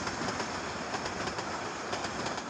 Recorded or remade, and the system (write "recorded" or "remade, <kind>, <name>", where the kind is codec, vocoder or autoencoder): recorded